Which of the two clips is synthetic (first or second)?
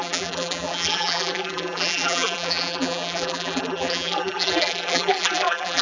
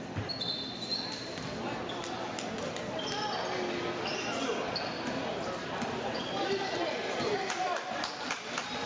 first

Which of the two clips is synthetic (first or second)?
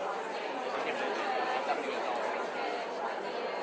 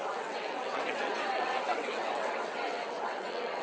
second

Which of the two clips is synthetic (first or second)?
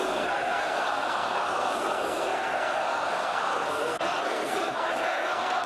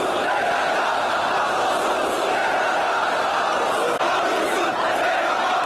first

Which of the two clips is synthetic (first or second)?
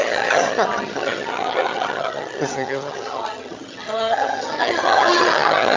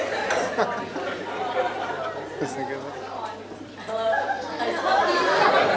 first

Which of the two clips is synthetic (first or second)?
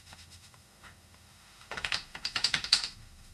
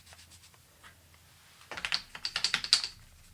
first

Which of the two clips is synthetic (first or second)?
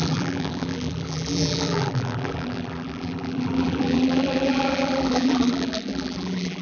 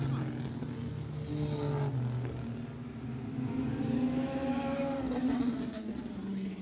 first